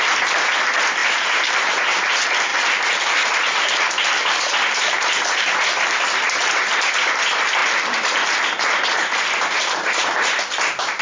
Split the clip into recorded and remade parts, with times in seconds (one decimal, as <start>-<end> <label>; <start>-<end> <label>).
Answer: 0.0-1.0 recorded; 1.0-2.1 remade; 2.1-2.5 recorded; 2.5-6.0 remade; 6.0-7.6 recorded; 7.6-9.3 remade; 9.3-11.0 recorded